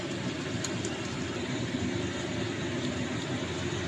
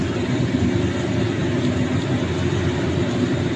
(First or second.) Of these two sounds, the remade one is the first